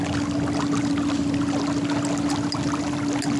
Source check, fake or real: real